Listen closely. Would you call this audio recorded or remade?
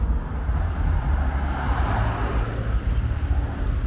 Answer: recorded